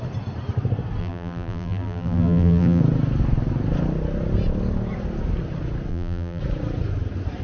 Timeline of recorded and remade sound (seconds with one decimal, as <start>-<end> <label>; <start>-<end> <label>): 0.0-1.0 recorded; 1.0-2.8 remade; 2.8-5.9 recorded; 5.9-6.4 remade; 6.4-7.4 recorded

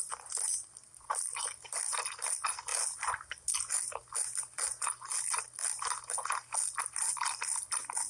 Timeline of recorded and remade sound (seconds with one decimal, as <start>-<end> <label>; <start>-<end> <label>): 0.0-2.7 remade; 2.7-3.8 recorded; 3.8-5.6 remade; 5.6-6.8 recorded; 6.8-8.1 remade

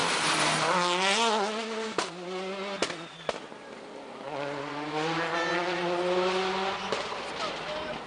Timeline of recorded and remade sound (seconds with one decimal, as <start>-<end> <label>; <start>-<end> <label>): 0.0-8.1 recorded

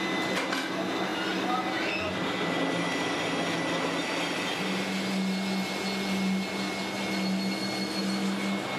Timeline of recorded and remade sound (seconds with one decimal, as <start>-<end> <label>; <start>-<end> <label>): 0.0-8.8 recorded

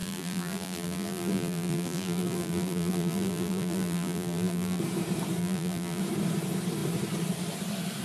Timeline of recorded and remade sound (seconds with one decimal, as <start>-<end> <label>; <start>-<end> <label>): 0.0-4.8 remade; 4.8-5.4 recorded; 5.4-6.0 remade; 6.0-8.0 recorded